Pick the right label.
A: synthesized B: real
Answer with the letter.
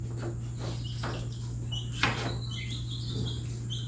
B